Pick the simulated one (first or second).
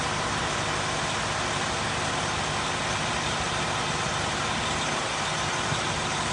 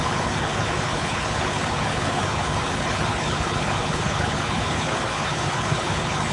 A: second